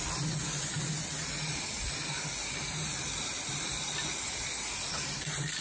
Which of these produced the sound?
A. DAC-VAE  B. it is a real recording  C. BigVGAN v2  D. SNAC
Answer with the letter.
B